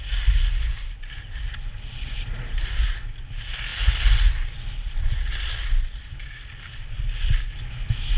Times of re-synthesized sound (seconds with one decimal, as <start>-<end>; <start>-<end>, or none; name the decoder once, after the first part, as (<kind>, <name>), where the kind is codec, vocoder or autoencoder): none